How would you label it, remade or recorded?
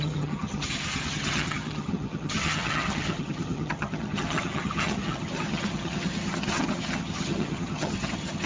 remade